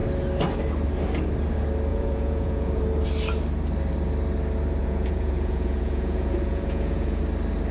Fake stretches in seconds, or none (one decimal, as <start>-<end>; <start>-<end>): 1.9-2.8; 4.8-7.2